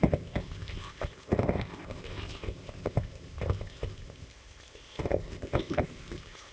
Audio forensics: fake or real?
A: fake